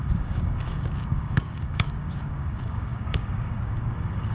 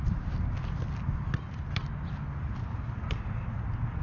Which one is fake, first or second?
first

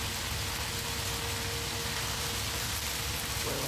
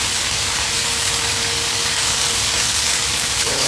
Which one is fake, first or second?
second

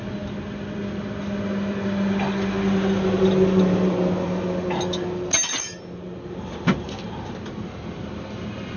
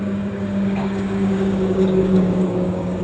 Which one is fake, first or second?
second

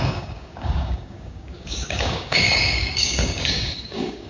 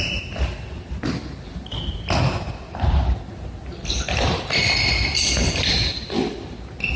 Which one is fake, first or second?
first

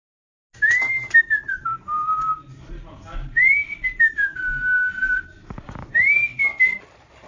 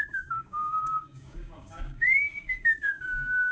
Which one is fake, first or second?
second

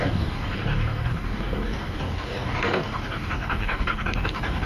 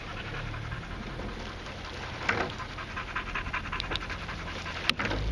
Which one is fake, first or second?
first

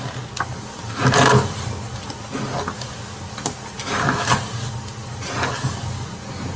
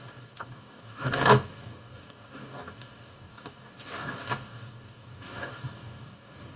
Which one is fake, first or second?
second